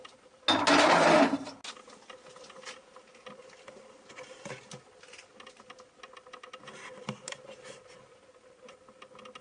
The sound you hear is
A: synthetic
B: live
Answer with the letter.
B